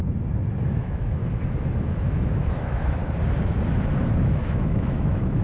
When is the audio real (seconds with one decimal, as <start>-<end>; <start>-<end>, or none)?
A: 0.0-0.7; 1.2-1.9; 3.0-4.2